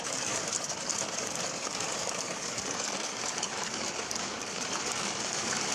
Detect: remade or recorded remade